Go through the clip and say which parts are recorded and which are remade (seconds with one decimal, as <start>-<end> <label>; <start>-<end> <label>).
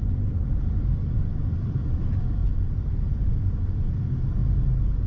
0.0-2.4 recorded; 2.4-3.6 remade; 3.6-5.1 recorded